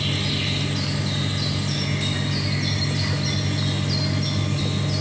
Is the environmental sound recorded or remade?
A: recorded